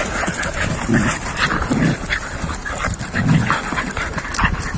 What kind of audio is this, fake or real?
real